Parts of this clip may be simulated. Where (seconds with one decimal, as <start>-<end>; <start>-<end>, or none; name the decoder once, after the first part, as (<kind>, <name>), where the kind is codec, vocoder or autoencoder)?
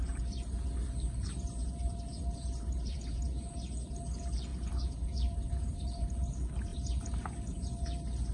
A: 1.6-3.9 (vocoder, BigVGAN v2); 4.5-6.2; 6.7-8.3